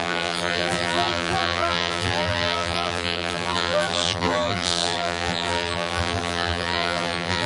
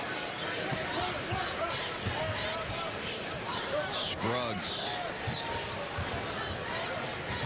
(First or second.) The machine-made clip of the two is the first